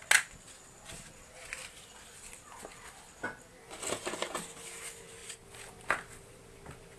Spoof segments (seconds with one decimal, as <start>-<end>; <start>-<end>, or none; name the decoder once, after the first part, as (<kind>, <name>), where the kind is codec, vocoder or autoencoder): none

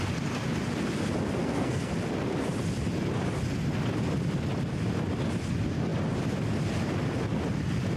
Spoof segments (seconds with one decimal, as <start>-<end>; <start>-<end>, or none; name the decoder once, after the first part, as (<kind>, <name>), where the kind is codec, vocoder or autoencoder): 1.4-1.9 (codec, SNAC)

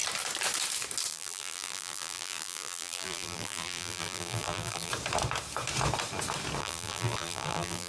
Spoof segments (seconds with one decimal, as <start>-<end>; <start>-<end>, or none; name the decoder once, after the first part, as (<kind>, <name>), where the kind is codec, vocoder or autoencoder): 1.1-4.9 (vocoder, BigVGAN v2); 6.6-7.9

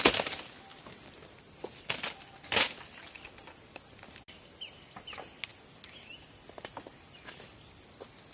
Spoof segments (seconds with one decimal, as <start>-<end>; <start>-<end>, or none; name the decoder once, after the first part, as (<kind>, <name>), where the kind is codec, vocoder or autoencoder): none

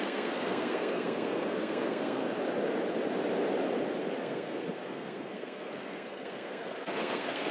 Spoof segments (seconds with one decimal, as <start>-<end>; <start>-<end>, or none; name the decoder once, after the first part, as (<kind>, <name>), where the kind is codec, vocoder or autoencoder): 0.0-2.2 (codec, SNAC); 4.2-7.5